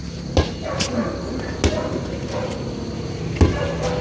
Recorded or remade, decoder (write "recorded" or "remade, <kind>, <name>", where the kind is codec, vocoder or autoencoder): recorded